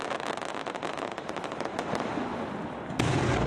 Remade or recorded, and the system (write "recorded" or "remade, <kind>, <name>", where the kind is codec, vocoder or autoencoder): recorded